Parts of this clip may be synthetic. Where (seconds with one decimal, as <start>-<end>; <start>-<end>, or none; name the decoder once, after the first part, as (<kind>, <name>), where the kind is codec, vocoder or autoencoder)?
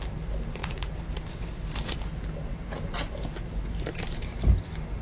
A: 0.6-1.2 (vocoder, Vocos)